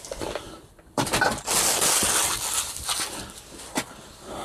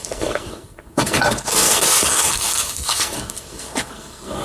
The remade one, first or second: second